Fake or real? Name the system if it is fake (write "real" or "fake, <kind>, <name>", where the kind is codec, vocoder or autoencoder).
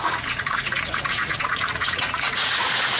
fake, vocoder, Vocos